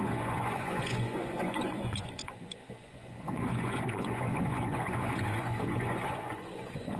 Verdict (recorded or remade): remade